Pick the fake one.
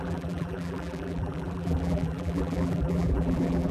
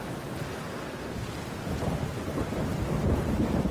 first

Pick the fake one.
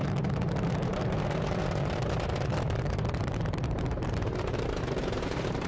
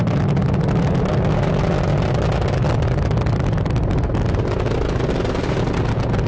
first